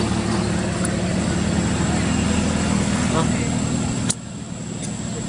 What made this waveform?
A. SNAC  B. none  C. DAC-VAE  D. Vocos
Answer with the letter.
B